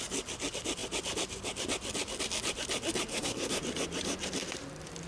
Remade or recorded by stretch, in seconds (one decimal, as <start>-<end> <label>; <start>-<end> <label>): 0.0-3.1 recorded; 3.1-3.6 remade; 3.6-5.1 recorded